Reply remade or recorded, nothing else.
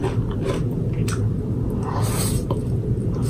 recorded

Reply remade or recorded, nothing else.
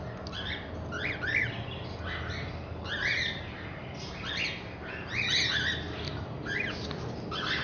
recorded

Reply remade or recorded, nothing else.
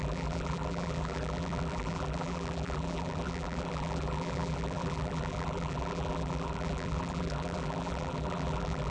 remade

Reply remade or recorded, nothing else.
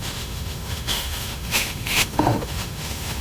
remade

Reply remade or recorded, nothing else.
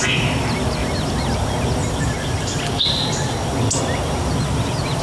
recorded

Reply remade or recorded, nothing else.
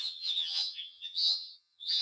remade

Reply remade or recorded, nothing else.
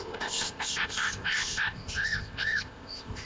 remade